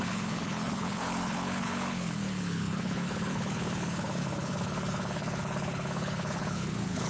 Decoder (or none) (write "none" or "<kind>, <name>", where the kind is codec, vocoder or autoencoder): codec, HILCodec